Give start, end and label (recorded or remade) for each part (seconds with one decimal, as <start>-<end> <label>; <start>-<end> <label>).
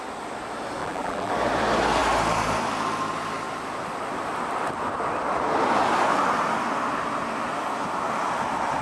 0.0-0.8 recorded; 0.8-1.3 remade; 1.3-8.8 recorded